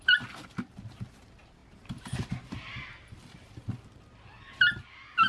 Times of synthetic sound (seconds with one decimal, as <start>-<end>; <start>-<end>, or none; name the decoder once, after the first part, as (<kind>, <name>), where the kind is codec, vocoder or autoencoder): none